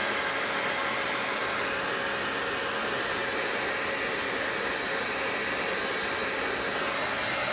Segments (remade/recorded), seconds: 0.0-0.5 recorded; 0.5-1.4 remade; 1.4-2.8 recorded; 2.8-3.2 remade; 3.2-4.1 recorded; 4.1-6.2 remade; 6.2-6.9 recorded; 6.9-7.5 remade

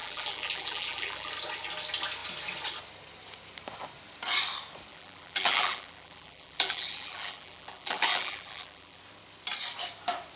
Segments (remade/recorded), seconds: 0.0-1.3 remade; 1.3-4.9 recorded; 4.9-9.0 remade; 9.0-10.4 recorded

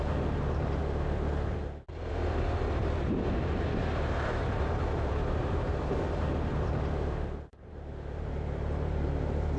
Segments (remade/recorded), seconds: 0.0-0.8 remade; 0.8-2.1 recorded; 2.1-9.6 remade